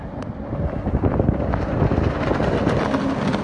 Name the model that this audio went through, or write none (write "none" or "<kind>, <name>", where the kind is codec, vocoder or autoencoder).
none